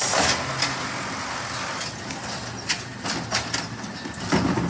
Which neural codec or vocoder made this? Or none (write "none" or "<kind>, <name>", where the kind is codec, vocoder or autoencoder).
none